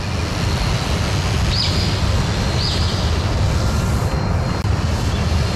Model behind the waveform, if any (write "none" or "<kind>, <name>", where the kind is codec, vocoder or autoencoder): none